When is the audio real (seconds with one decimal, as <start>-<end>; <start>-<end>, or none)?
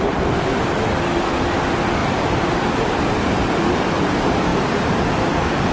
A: 0.0-2.0; 3.6-5.7